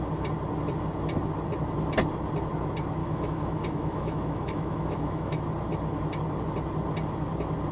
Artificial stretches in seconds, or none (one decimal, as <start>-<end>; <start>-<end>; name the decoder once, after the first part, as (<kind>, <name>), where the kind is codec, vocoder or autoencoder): 3.0-5.4 (autoencoder, DAC-VAE)